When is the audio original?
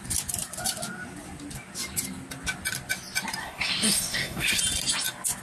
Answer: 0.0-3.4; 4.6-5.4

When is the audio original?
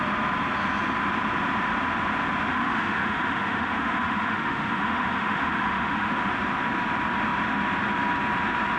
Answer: 0.0-2.5; 6.1-8.8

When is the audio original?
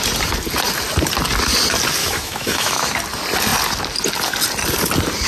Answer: 0.0-2.0; 2.9-5.3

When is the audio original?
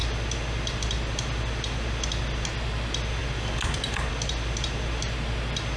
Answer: 0.0-5.8